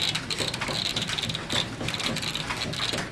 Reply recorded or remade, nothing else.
recorded